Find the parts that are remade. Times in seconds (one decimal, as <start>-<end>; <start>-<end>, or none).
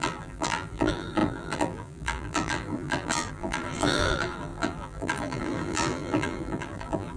0.0-7.2